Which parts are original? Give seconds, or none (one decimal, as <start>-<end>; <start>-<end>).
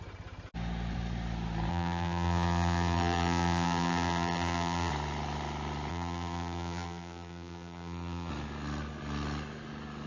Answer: 0.0-1.7; 4.9-5.9; 8.3-10.1